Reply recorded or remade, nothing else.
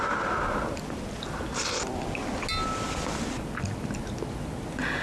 recorded